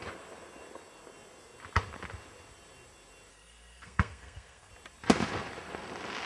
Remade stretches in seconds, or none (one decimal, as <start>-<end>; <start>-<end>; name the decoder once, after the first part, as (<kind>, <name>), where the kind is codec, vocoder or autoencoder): 3.3-4.7 (codec, SNAC)